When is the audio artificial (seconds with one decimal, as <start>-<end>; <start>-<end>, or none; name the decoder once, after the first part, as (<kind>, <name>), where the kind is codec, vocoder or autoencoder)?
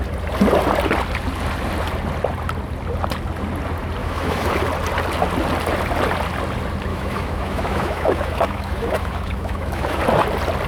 4.0-4.5 (autoencoder, DAC-VAE); 6.9-10.0